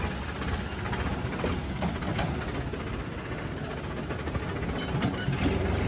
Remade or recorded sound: recorded